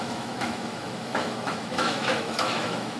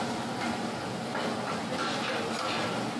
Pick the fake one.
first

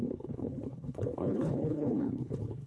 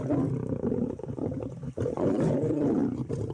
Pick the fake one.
first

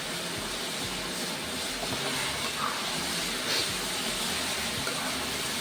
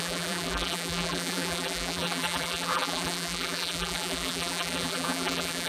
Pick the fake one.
second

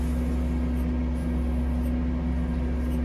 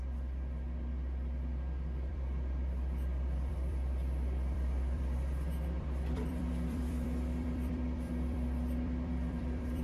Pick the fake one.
second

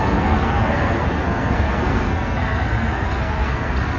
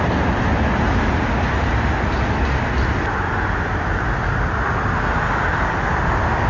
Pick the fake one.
first